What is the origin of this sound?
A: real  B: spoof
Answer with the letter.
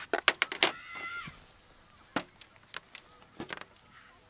A